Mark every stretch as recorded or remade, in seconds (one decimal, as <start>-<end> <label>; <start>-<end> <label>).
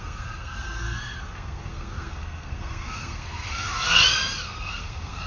0.0-5.3 remade